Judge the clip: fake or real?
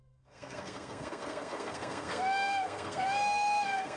fake